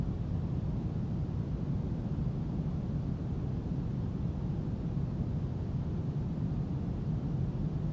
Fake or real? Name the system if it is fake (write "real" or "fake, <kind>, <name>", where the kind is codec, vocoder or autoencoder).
real